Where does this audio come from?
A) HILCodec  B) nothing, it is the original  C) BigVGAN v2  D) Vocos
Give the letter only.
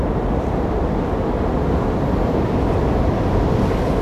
B